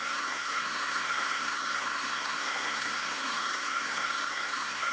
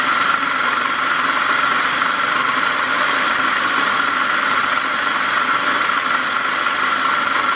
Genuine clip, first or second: second